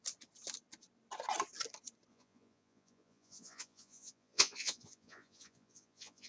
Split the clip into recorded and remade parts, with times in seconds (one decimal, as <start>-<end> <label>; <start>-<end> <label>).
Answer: 0.0-2.1 recorded; 2.1-6.3 remade